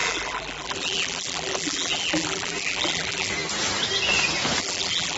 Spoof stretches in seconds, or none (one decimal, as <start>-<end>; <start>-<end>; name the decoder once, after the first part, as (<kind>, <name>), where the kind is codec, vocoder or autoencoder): 0.0-3.3 (vocoder, BigVGAN v2); 4.6-5.2